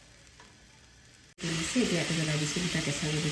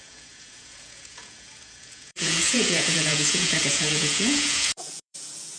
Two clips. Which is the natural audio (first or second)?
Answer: first